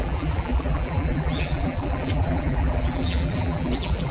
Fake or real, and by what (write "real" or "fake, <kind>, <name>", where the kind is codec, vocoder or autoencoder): fake, vocoder, BigVGAN v2